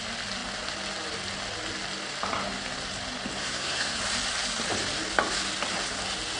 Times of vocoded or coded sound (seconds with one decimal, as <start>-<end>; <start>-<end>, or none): 3.4-4.0